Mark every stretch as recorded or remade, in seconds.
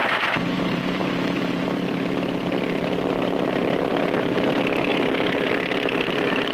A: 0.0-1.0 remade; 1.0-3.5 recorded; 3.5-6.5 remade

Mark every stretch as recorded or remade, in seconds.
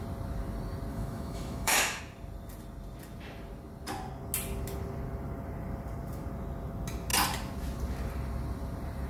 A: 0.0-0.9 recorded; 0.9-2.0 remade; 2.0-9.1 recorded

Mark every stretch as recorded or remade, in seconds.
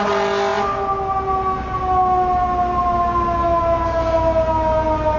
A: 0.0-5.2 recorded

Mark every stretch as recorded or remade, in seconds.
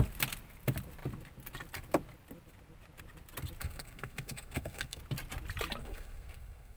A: 0.0-3.6 recorded; 3.6-5.0 remade; 5.0-5.8 recorded; 5.8-6.8 remade